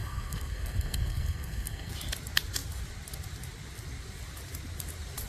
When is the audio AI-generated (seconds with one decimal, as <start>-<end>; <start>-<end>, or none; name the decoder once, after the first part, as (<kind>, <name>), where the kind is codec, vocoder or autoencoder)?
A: 0.0-1.9 (codec, SNAC)